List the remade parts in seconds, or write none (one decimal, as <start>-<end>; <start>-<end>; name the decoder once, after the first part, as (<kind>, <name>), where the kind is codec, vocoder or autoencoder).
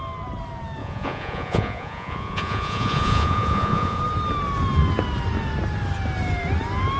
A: 0.8-4.0 (vocoder, Vocos)